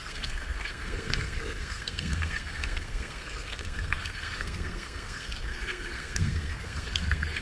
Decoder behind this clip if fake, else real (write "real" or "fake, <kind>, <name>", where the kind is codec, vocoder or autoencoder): fake, codec, SNAC